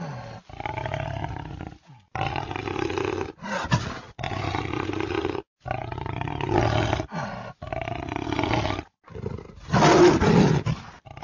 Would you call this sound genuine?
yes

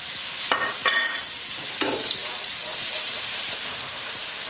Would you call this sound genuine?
no